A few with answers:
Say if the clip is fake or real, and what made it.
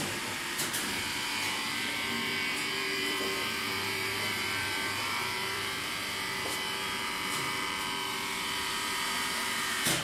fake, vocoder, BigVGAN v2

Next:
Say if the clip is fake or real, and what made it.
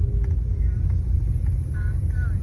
real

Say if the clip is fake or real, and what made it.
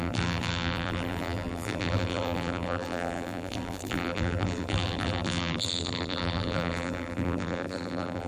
fake, vocoder, BigVGAN v2